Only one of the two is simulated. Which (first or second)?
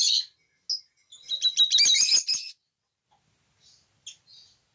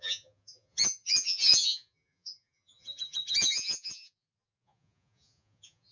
second